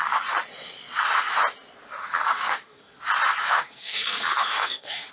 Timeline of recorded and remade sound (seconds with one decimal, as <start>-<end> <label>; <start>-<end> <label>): 0.0-2.0 recorded; 2.0-3.0 remade; 3.0-3.4 recorded; 3.4-5.1 remade

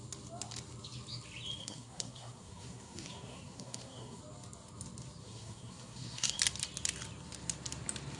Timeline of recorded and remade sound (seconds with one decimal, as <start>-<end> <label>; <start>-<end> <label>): 0.0-1.6 recorded; 1.6-4.2 remade; 4.2-5.2 recorded; 5.2-6.4 remade; 6.4-8.2 recorded

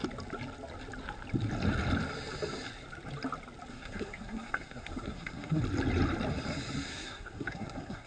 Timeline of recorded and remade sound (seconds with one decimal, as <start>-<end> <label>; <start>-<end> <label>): 0.0-3.7 recorded; 3.7-5.6 remade; 5.6-6.9 recorded; 6.9-8.1 remade